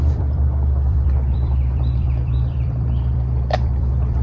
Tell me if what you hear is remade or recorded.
remade